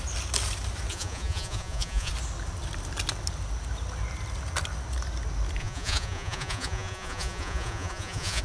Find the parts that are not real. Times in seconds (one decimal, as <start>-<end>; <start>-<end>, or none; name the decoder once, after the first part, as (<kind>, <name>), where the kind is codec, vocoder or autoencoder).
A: 0.9-2.1 (vocoder, Vocos); 5.6-8.4